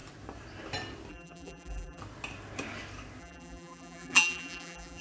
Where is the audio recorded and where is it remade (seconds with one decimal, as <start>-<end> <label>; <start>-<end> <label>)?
0.0-1.1 recorded; 1.1-2.0 remade; 2.0-3.2 recorded; 3.2-5.0 remade